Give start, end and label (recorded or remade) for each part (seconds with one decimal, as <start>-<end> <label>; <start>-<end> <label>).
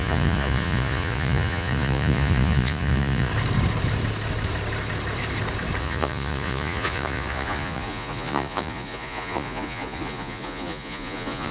0.0-3.3 remade; 3.3-5.8 recorded; 5.8-11.5 remade